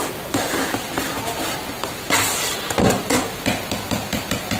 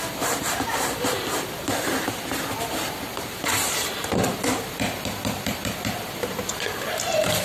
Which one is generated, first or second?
second